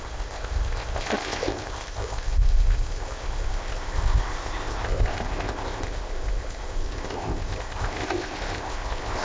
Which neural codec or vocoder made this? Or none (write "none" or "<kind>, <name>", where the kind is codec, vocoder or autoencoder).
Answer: codec, ZipCodec